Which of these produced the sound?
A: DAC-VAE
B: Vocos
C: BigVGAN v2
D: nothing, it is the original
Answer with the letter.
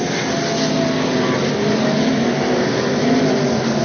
D